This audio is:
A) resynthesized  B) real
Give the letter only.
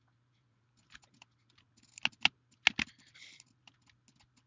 B